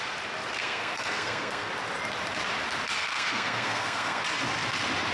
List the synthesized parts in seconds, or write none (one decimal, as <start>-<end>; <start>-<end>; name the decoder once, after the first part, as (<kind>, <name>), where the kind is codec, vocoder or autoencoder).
0.6-1.7 (codec, SNAC); 3.1-4.2